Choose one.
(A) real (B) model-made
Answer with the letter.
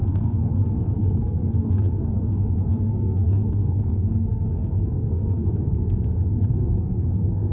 B